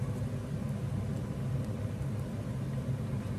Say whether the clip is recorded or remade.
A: recorded